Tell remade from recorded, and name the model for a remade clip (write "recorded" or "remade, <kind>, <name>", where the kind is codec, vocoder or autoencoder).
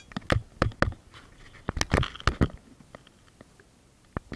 recorded